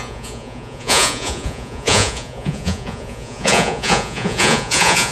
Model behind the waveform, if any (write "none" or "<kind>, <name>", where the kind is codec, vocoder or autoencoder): vocoder, Vocos